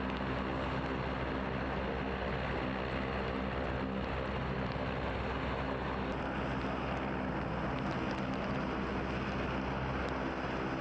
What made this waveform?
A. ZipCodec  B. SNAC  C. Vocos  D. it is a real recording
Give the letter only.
D